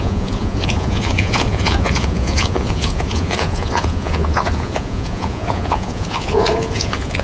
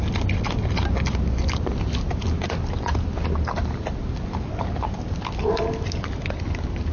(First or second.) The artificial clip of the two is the first